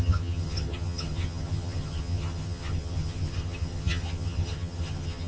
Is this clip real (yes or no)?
no